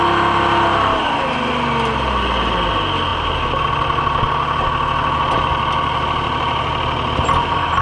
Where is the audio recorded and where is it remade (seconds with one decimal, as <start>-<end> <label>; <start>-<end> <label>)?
0.0-7.8 recorded